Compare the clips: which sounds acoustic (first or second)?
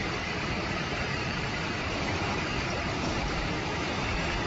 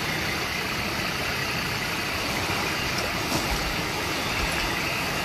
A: second